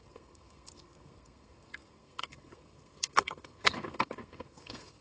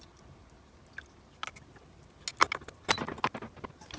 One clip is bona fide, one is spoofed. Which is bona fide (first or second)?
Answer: second